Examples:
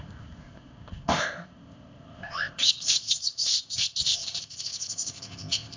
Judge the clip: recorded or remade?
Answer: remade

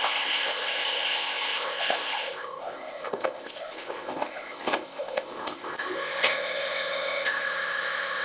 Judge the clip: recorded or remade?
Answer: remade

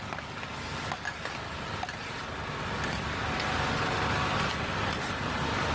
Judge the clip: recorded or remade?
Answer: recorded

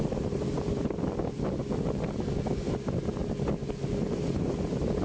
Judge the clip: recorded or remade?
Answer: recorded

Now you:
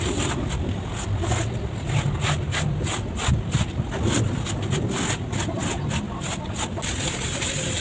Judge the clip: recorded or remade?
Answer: recorded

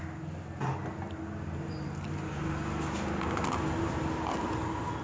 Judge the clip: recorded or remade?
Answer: recorded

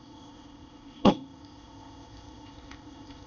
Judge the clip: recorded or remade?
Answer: remade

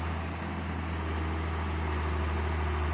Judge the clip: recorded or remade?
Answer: recorded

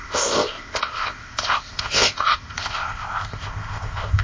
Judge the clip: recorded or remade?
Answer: remade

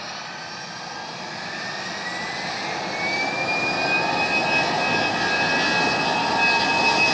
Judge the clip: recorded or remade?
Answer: recorded